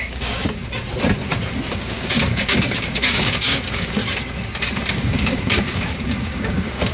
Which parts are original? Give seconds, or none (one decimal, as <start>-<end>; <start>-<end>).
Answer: 0.6-1.7; 4.0-4.9